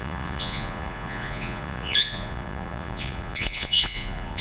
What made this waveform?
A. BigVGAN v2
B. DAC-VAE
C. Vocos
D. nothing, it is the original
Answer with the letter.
C